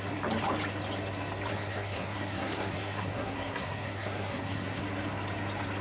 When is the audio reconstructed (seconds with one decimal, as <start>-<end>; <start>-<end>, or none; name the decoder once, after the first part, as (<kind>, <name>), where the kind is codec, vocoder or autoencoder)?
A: 1.5-4.8 (codec, SNAC)